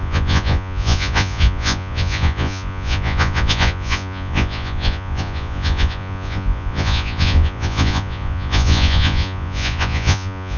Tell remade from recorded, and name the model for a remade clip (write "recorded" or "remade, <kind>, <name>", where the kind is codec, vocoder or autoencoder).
remade, vocoder, Vocos